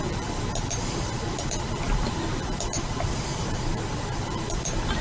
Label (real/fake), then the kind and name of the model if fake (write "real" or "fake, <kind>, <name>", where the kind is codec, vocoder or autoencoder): fake, vocoder, BigVGAN v2